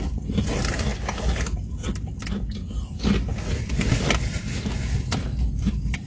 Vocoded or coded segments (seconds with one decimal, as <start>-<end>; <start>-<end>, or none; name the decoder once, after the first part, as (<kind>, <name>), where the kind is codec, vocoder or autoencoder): 3.3-3.9 (vocoder, Vocos)